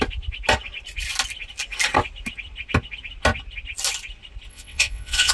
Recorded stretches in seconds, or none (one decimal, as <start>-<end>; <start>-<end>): 0.0-4.5